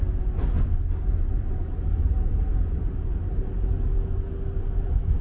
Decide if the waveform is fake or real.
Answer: real